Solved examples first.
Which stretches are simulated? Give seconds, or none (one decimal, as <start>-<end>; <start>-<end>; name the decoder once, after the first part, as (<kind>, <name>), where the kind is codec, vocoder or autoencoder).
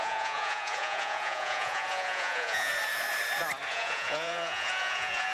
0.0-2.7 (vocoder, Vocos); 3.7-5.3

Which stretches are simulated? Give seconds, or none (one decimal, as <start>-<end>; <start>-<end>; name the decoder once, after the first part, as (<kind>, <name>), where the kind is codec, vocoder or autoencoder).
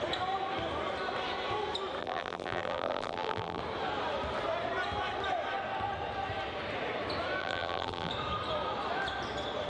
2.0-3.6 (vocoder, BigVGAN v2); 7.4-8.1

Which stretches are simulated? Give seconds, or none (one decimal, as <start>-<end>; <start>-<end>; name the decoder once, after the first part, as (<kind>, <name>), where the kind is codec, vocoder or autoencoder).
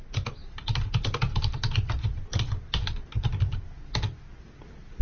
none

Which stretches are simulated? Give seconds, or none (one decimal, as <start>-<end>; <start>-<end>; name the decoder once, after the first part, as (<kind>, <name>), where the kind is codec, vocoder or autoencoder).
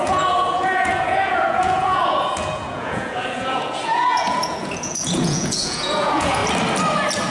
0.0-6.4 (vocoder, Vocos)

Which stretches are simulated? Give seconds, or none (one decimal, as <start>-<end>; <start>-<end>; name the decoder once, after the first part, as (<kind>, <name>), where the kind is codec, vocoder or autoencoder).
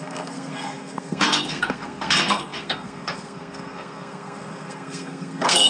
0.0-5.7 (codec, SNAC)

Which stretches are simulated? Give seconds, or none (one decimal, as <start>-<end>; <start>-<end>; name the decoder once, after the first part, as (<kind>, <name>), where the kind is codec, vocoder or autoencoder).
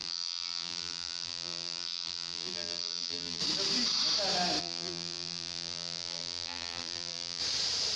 0.0-3.4 (vocoder, BigVGAN v2); 4.6-7.4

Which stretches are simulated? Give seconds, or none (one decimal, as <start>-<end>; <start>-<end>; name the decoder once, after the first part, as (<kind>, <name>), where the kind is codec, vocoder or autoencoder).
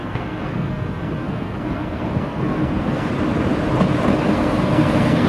0.0-3.1 (codec, SNAC); 4.1-5.3